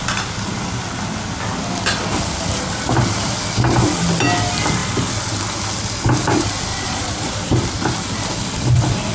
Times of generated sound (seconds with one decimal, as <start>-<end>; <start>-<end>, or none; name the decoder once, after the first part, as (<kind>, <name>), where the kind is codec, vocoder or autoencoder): 6.7-7.3 (vocoder, Vocos)